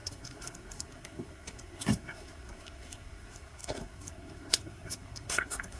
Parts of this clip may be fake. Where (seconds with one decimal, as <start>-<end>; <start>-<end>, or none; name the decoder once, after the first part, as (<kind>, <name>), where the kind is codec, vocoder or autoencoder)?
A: 0.0-5.8 (codec, SNAC)